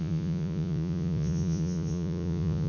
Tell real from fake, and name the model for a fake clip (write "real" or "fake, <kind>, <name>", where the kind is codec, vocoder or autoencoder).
fake, vocoder, Vocos